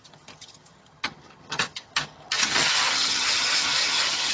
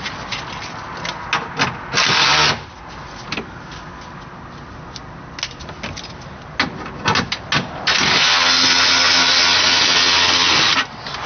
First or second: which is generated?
first